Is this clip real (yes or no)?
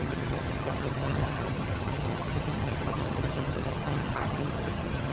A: no